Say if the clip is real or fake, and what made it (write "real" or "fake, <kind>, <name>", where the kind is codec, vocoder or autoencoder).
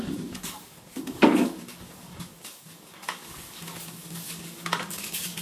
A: fake, codec, DAC